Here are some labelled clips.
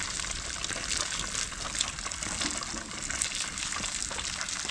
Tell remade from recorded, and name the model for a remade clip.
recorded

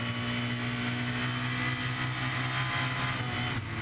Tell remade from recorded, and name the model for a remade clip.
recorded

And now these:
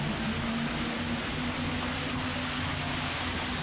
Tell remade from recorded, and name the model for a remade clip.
recorded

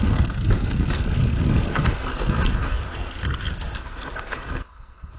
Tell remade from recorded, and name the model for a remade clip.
remade, codec, SNAC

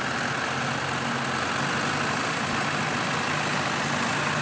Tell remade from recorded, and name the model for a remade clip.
recorded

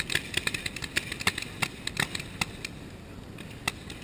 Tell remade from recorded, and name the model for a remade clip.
recorded